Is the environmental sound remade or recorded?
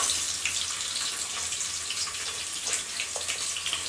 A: recorded